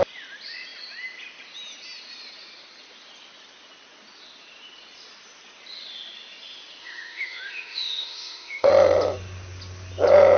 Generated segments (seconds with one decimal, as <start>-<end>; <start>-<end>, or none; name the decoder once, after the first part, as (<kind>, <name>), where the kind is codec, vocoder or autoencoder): 6.8-8.7 (autoencoder, DAC-VAE)

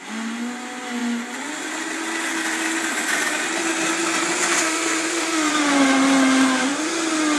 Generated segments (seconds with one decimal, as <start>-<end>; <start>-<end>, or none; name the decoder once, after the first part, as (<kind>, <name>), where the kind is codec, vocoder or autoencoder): 4.6-5.5 (autoencoder, DAC-VAE)

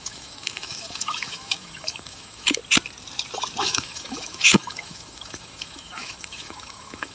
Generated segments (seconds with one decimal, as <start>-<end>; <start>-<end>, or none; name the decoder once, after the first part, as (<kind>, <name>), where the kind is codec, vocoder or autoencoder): 0.0-2.6 (autoencoder, DAC-VAE); 3.6-7.1